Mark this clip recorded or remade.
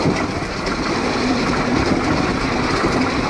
recorded